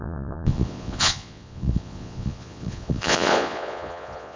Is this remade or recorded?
remade